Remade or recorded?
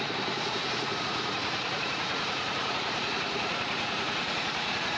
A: remade